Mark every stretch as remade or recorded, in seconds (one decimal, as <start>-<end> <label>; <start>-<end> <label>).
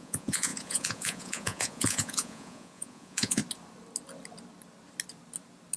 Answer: 0.0-3.4 remade; 3.4-5.8 recorded